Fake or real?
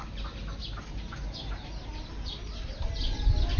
real